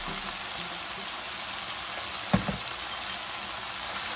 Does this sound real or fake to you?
real